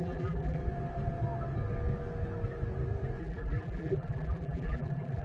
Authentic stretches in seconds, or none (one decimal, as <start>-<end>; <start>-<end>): 0.6-3.2